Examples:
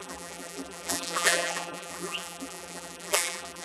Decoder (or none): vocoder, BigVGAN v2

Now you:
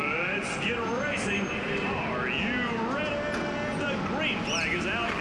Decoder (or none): none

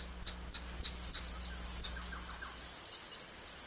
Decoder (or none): none